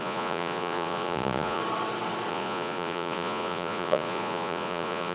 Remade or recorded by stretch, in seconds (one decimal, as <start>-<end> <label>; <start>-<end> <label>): 0.0-1.6 remade; 1.6-2.3 recorded; 2.3-5.1 remade